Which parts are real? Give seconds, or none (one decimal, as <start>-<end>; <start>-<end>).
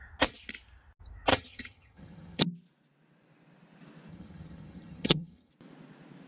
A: 0.0-1.3; 2.4-4.1; 5.5-6.3